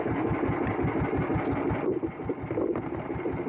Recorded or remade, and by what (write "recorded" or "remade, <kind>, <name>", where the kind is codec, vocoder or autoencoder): recorded